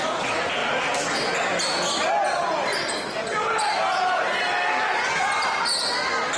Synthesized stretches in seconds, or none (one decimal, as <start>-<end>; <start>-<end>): 0.6-1.9; 2.7-4.2; 4.8-5.3